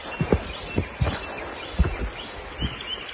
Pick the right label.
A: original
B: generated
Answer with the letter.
A